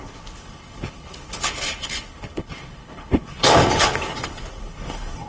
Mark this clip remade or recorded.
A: remade